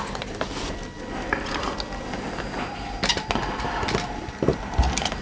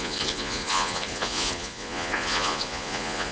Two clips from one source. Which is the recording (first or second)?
first